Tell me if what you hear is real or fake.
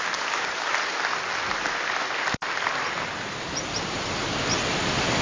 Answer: real